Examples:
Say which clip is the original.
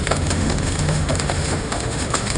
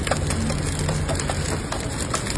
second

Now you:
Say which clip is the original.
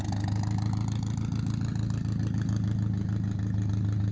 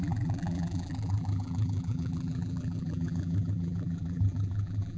first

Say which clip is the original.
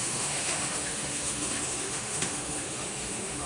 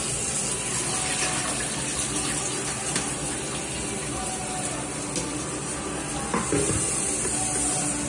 second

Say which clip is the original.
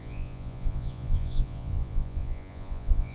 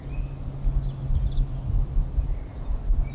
second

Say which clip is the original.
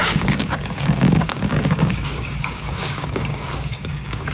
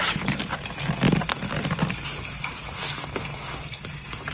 second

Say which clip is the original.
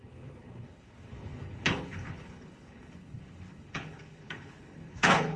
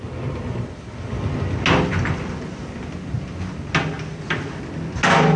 second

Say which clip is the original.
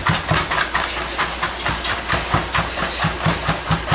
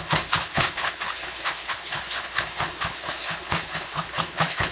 first